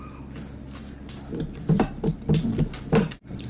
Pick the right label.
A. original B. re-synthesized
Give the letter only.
A